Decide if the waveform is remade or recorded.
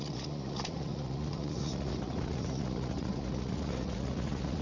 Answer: remade